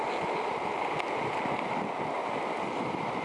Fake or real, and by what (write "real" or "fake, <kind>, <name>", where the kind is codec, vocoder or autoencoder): real